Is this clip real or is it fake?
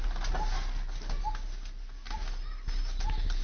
real